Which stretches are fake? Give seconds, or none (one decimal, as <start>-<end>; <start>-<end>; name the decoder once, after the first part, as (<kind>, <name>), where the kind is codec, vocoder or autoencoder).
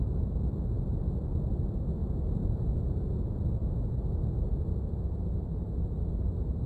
2.0-2.7 (vocoder, Vocos); 3.6-4.1